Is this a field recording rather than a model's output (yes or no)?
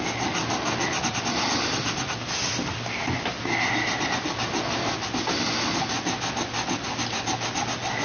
yes